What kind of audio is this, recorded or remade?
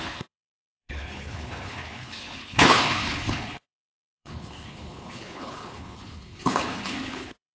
remade